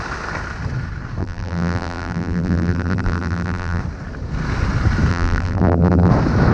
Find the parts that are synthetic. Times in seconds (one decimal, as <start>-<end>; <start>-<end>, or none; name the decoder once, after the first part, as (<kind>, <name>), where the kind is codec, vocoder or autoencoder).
1.2-3.8 (vocoder, BigVGAN v2); 5.1-6.1

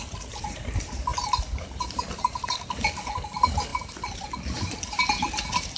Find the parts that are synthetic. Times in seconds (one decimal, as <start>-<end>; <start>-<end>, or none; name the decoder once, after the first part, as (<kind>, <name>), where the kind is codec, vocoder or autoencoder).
none

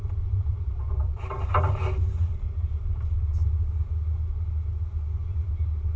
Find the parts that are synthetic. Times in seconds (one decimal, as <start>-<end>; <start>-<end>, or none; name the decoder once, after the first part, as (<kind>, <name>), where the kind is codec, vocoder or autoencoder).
none

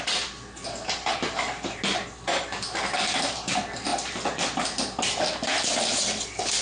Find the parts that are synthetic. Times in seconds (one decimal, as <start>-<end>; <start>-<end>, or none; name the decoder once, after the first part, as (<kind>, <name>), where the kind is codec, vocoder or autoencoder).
none

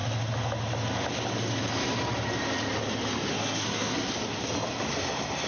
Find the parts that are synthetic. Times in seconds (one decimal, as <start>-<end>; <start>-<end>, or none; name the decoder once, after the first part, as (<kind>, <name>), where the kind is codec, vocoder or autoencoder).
3.3-4.1 (codec, SNAC)

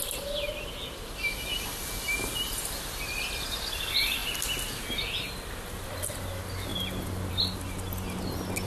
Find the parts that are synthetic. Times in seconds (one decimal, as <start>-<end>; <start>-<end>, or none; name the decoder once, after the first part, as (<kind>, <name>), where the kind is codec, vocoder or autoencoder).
none